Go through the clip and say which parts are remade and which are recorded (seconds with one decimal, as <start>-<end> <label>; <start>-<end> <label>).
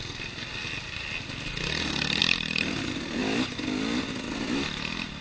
0.0-5.2 recorded